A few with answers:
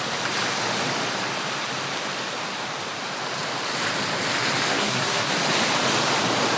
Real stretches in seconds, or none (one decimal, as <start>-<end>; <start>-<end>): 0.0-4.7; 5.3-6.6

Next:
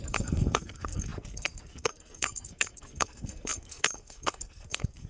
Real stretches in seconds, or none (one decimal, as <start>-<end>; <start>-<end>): none

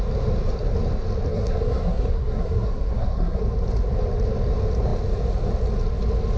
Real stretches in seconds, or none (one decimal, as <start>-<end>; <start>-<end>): 0.0-1.3; 3.4-6.4

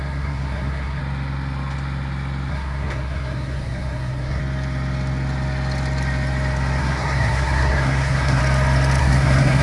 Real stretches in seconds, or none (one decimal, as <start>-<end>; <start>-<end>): 1.0-2.5; 4.4-6.8; 8.4-9.0

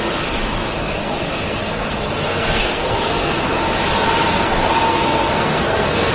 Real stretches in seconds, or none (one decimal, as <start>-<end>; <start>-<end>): 0.0-0.8; 3.3-4.3

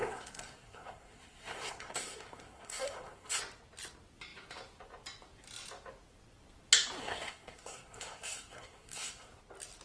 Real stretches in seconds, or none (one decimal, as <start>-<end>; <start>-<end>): 3.4-7.0; 9.3-9.8

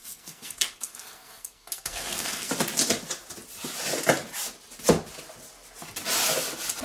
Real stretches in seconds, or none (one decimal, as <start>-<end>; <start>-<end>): 2.5-6.8